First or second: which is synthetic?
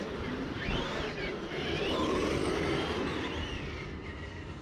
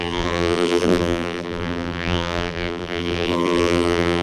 second